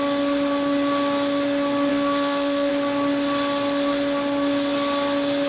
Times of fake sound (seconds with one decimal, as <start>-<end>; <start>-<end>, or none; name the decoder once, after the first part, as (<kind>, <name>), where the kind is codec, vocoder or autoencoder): 1.9-2.7 (codec, SNAC)